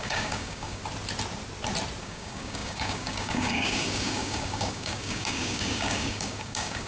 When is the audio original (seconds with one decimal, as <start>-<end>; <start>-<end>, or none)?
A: 0.8-2.0